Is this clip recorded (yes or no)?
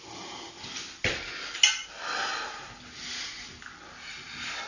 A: yes